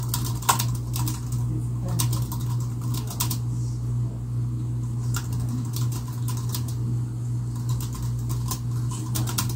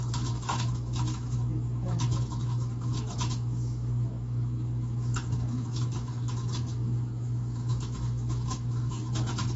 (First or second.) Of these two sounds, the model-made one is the second